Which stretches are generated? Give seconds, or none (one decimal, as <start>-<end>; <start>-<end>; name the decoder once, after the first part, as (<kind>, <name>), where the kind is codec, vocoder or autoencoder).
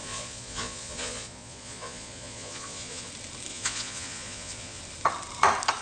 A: 0.0-3.1 (vocoder, Vocos); 3.5-4.8